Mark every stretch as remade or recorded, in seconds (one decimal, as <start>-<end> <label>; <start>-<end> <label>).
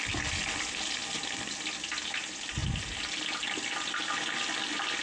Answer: 0.0-5.0 recorded